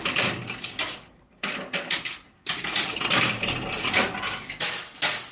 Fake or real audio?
real